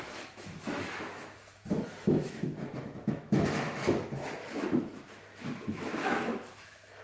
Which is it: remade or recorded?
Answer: remade